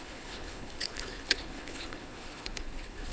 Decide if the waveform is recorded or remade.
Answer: remade